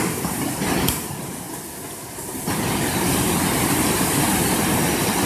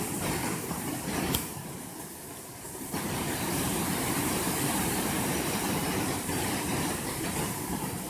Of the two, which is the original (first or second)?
first